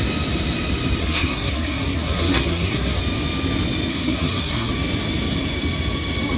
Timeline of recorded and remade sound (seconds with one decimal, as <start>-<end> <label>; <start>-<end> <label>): 0.0-1.0 recorded; 1.0-3.0 remade; 3.0-3.9 recorded; 3.9-4.7 remade; 4.7-6.4 recorded